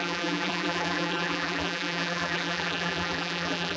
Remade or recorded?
remade